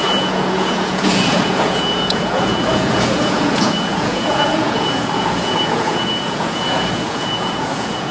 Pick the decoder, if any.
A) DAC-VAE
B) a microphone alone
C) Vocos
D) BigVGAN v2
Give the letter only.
C